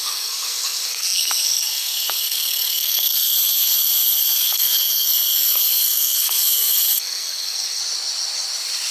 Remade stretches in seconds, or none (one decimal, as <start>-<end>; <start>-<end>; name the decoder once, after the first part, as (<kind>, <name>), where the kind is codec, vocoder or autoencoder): 0.0-7.8 (codec, SNAC)